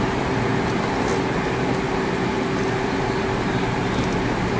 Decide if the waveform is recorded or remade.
recorded